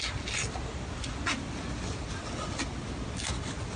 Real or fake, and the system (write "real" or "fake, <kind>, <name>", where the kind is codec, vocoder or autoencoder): real